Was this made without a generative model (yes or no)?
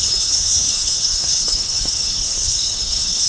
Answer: no